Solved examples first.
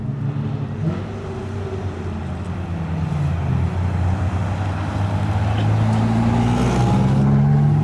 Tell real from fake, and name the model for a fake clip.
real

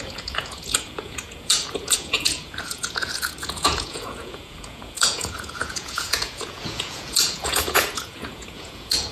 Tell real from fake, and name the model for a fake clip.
fake, vocoder, Vocos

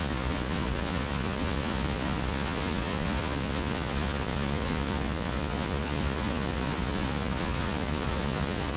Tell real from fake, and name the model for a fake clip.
fake, vocoder, Vocos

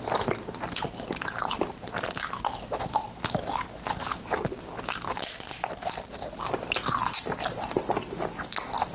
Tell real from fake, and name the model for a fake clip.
real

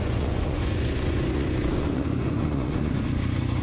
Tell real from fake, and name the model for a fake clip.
fake, vocoder, Vocos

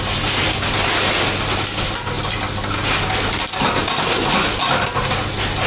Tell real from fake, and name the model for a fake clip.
real